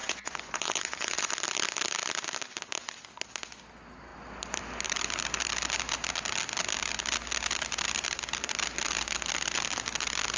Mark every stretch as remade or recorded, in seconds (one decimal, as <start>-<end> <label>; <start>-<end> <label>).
0.0-1.3 remade; 1.3-10.4 recorded